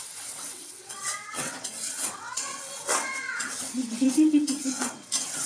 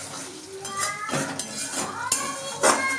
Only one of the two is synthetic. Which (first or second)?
first